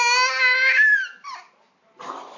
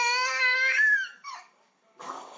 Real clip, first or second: first